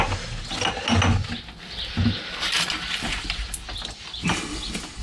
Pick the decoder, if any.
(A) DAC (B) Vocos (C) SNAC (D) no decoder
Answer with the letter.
D